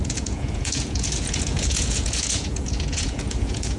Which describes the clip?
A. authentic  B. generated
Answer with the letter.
B